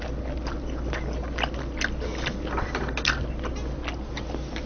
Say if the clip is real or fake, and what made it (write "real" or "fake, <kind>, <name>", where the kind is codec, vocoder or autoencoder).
real